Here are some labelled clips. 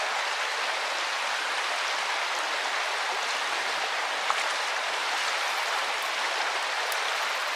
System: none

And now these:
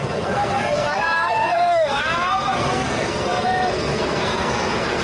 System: codec, SNAC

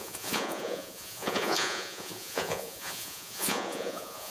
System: vocoder, Vocos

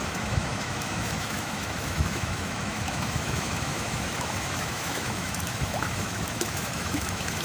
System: autoencoder, DAC-VAE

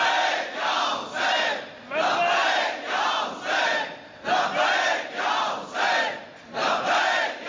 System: none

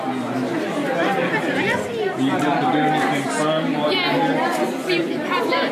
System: none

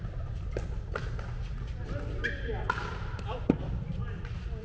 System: none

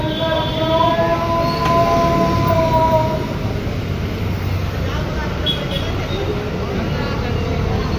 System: none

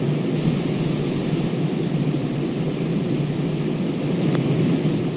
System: none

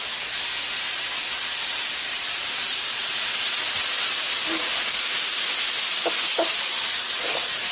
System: none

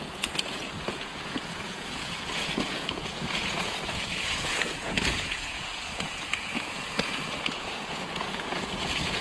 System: vocoder, Vocos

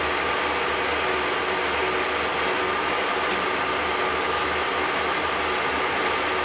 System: none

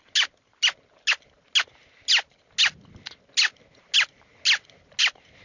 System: none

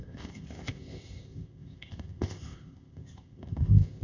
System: codec, ZipCodec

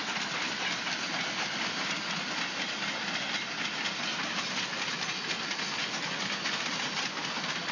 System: none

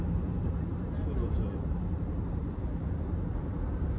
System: none